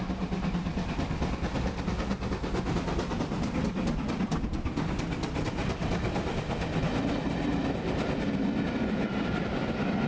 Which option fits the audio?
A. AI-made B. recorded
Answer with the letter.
B